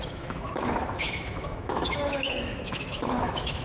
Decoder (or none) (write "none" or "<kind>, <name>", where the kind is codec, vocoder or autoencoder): autoencoder, DAC-VAE